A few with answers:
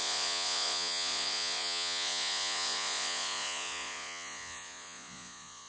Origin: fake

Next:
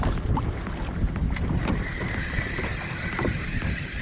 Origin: real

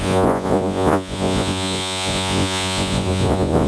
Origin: fake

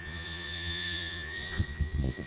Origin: fake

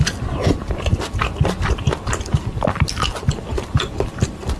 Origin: real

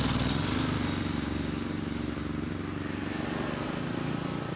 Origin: real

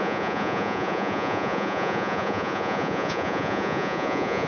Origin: fake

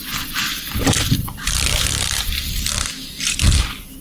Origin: real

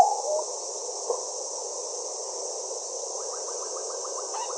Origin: real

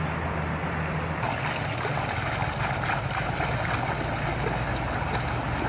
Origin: real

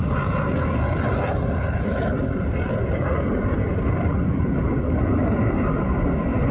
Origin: real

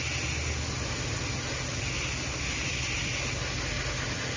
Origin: real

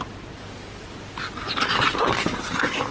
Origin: real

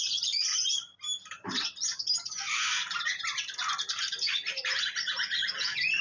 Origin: real